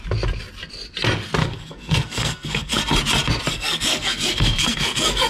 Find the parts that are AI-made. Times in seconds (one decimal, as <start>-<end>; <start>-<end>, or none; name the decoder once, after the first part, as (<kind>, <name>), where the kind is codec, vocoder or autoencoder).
1.4-2.8 (codec, SNAC); 3.5-5.3